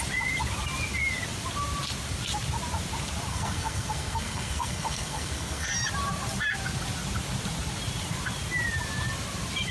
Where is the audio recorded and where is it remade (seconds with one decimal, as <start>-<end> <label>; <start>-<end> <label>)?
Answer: 0.0-3.3 recorded; 3.3-5.7 remade; 5.7-9.7 recorded